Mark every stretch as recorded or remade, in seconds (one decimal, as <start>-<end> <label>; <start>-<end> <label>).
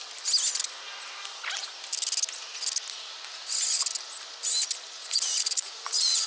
0.0-5.0 recorded; 5.0-6.3 remade